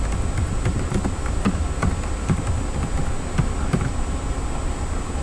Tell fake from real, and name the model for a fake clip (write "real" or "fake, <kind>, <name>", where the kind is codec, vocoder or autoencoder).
real